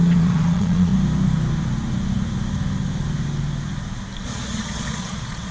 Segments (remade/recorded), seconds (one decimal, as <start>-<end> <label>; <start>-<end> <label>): 0.0-0.9 remade; 0.9-4.2 recorded; 4.2-5.5 remade